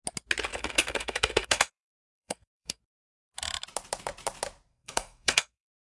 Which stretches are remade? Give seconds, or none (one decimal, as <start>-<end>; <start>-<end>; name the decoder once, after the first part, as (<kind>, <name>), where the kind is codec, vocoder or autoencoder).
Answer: 0.5-2.8 (codec, SNAC); 4.7-5.8